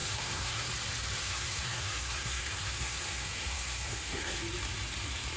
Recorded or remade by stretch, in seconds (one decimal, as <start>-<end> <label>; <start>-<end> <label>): 0.0-0.7 remade; 0.7-1.2 recorded; 1.2-4.4 remade; 4.4-5.4 recorded